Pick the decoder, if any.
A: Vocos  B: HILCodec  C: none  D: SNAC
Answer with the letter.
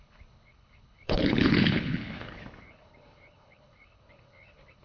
B